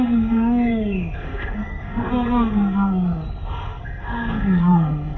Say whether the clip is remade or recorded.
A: remade